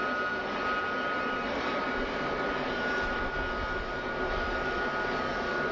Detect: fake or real real